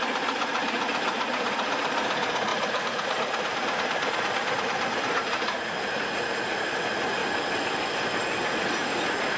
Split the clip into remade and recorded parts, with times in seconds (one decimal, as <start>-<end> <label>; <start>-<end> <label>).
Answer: 0.0-7.2 remade; 7.2-8.4 recorded; 8.4-9.4 remade